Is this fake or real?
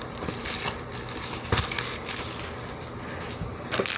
real